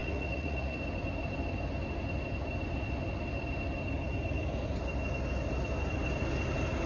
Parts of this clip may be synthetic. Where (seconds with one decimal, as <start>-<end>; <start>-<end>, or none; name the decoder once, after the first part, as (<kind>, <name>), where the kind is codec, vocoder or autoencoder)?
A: 0.0-0.8 (vocoder, Vocos)